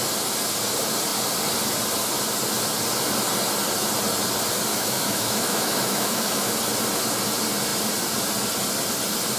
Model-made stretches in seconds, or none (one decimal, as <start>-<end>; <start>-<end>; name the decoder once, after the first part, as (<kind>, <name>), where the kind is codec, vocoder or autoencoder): 4.7-6.5 (autoencoder, DAC-VAE)